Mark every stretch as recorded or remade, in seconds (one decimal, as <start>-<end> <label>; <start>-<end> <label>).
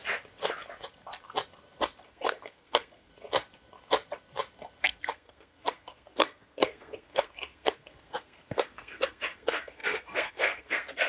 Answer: 0.0-2.1 recorded; 2.1-3.1 remade; 3.1-5.0 recorded; 5.0-11.1 remade